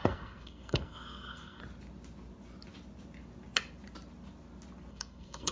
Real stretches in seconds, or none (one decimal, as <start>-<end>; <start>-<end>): 1.6-4.9